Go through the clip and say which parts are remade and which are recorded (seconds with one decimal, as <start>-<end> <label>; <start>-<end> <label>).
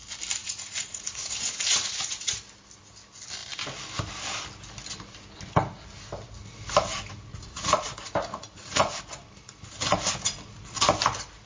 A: 0.0-0.4 recorded; 0.4-2.4 remade; 2.4-7.3 recorded; 7.3-7.9 remade; 7.9-8.3 recorded; 8.3-9.0 remade; 9.0-11.5 recorded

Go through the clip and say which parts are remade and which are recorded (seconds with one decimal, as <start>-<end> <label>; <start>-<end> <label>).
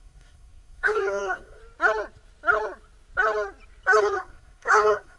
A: 0.0-1.6 remade; 1.6-4.0 recorded; 4.0-5.2 remade